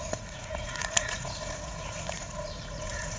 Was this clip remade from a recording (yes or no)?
yes